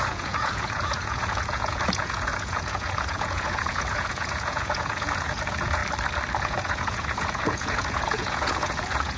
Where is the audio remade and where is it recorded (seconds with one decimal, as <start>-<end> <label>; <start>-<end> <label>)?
0.0-5.8 remade; 5.8-6.4 recorded; 6.4-9.2 remade